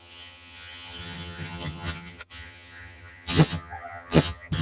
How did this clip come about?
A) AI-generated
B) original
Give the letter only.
A